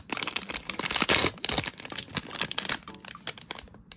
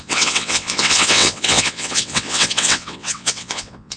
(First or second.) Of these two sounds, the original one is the first